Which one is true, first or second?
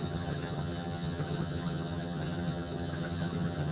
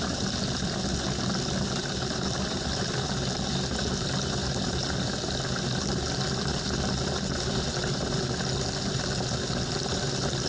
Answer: second